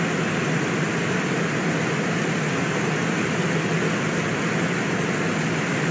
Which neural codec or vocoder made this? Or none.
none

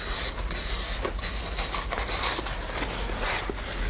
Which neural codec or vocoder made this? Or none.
none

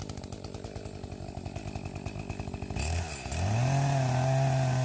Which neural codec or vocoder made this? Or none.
none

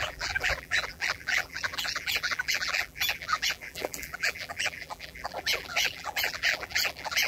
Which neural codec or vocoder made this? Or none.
vocoder, BigVGAN v2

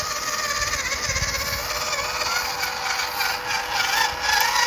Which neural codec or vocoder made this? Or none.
none